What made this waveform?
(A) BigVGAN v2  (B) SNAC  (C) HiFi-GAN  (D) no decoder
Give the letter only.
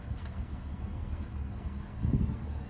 B